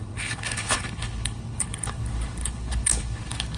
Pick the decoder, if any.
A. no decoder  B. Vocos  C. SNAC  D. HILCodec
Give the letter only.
D